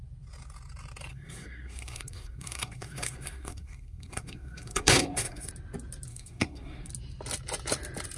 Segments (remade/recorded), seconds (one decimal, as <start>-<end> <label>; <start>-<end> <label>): 0.0-1.1 recorded; 1.1-5.5 remade; 5.5-6.1 recorded; 6.1-6.9 remade; 6.9-8.2 recorded